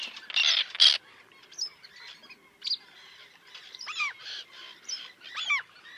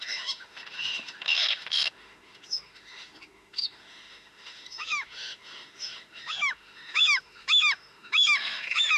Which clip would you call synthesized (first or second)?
second